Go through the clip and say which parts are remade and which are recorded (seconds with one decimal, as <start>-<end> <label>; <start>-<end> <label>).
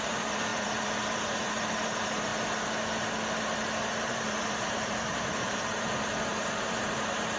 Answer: 0.0-2.3 remade; 2.3-4.1 recorded; 4.1-7.4 remade